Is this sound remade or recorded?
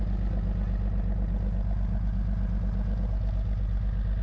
recorded